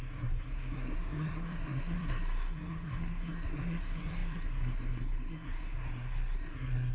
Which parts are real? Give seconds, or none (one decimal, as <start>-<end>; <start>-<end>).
none

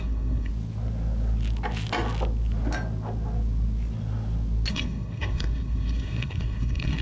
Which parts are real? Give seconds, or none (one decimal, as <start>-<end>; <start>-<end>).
0.5-4.7

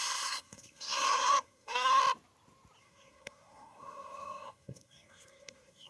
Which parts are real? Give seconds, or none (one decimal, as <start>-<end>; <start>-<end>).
2.0-2.8

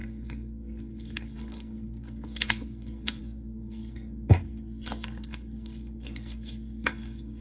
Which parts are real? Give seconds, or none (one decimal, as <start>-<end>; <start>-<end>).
none

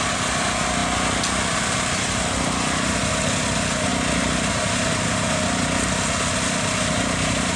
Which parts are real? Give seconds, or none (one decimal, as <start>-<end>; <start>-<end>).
0.0-7.6

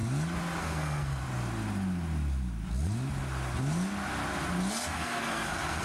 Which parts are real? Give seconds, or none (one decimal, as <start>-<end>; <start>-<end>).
0.0-0.6; 1.2-4.7